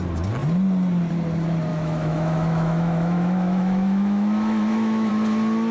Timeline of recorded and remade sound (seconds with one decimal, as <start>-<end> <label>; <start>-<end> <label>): 0.0-1.7 recorded; 1.7-5.1 remade; 5.1-5.7 recorded